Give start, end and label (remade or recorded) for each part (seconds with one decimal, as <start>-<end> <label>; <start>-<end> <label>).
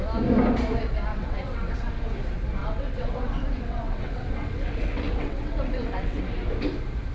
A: 0.0-1.1 recorded; 1.1-1.9 remade; 1.9-2.6 recorded; 2.6-6.2 remade; 6.2-7.1 recorded